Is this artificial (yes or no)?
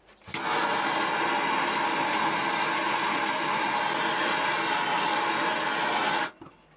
no